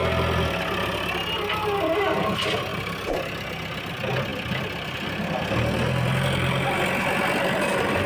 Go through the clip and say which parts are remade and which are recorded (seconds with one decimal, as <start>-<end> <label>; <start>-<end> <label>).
0.0-4.3 recorded; 4.3-7.0 remade; 7.0-8.1 recorded